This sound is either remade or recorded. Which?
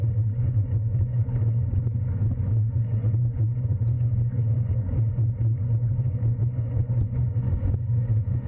remade